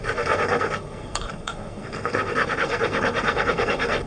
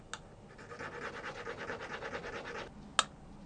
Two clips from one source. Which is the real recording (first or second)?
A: second